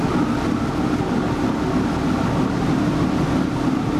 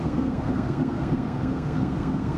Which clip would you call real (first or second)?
first